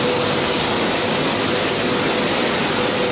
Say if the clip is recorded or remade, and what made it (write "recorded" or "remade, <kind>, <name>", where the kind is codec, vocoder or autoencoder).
recorded